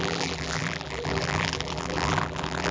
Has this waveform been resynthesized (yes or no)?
yes